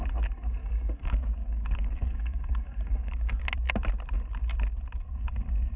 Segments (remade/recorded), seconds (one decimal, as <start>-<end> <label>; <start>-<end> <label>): 0.0-0.6 recorded; 0.6-3.4 remade; 3.4-5.8 recorded